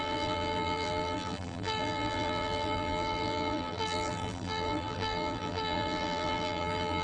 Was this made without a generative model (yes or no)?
no